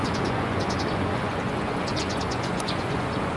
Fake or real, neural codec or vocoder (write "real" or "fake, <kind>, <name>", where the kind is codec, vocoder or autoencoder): fake, vocoder, Vocos